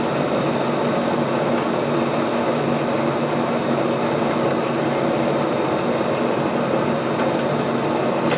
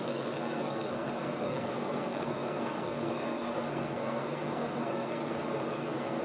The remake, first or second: second